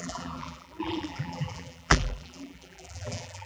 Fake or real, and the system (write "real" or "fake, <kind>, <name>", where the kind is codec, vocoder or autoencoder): fake, vocoder, BigVGAN v2